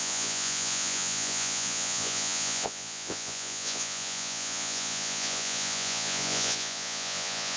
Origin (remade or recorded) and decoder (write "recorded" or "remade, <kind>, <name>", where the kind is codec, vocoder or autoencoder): remade, vocoder, Vocos